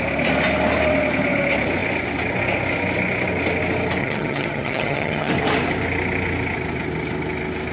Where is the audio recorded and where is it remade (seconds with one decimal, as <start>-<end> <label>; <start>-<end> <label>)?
0.0-4.0 recorded; 4.0-5.3 remade; 5.3-7.7 recorded